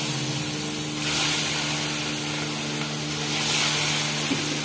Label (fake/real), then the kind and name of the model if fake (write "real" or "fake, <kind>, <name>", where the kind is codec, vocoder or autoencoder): real